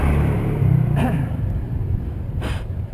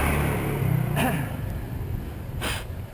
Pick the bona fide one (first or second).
second